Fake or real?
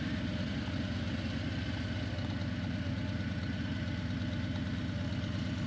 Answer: real